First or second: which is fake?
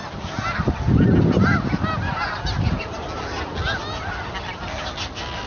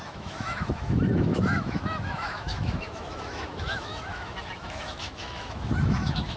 second